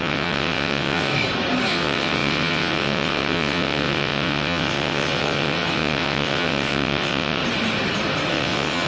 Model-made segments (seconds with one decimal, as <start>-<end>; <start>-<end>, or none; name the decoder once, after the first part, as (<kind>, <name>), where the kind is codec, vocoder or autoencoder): 0.0-1.1 (vocoder, WaveNeXt); 1.7-7.4; 8.3-8.9